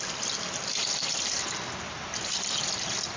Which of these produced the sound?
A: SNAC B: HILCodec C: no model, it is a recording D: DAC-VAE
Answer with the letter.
C